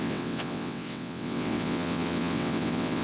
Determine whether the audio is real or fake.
fake